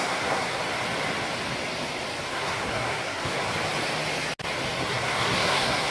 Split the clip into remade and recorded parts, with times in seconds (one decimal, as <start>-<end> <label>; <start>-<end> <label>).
0.0-0.6 remade; 0.6-2.3 recorded; 2.3-3.5 remade; 3.5-4.9 recorded; 4.9-5.9 remade